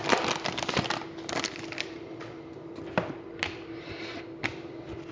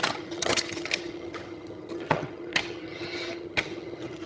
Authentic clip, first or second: first